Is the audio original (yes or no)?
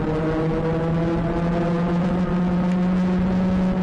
yes